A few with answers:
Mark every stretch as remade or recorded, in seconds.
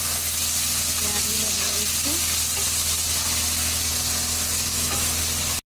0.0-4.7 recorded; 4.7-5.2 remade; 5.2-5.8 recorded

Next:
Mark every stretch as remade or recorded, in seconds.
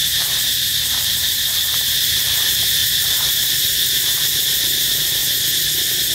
0.0-5.2 remade; 5.2-6.1 recorded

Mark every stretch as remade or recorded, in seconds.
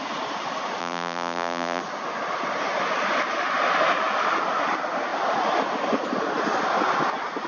0.0-0.8 recorded; 0.8-1.8 remade; 1.8-7.5 recorded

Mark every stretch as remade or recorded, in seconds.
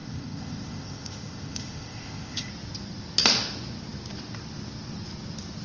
0.0-2.5 remade; 2.5-5.6 recorded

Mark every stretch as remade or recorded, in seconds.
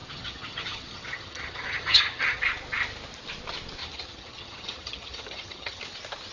0.0-2.4 remade; 2.4-3.8 recorded; 3.8-5.8 remade; 5.8-6.3 recorded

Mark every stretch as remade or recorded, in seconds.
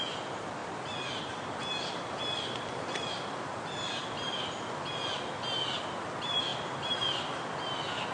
0.0-8.1 recorded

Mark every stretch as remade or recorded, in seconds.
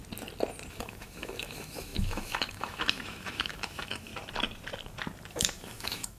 0.0-0.7 recorded; 0.7-4.1 remade; 4.1-5.3 recorded; 5.3-6.2 remade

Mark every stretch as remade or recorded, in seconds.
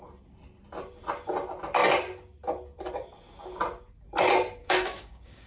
0.0-4.6 recorded; 4.6-5.5 remade